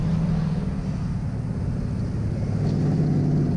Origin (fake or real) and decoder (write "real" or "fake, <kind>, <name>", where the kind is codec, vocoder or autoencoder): real